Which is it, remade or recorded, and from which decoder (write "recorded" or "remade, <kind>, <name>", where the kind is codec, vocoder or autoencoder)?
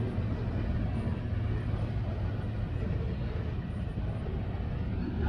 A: recorded